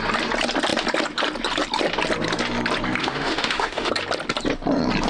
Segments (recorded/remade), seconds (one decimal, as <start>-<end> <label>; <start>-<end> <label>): 0.0-3.0 recorded; 3.0-3.9 remade; 3.9-5.1 recorded